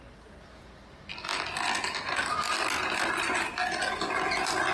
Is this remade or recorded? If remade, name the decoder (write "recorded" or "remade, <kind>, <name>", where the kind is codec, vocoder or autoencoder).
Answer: recorded